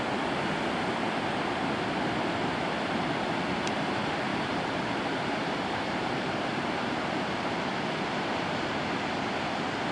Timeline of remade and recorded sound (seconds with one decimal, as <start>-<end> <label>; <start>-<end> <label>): 0.0-4.3 recorded; 4.3-8.5 remade; 8.5-9.9 recorded